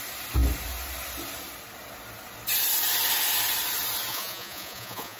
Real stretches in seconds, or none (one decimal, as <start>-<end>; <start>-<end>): 0.0-4.1